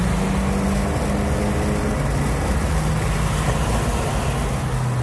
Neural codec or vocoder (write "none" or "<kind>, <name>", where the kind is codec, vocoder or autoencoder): none